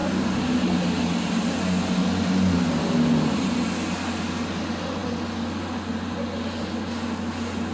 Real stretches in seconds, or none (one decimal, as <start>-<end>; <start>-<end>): 0.0-7.7